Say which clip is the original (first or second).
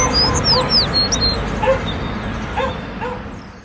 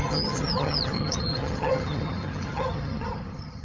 first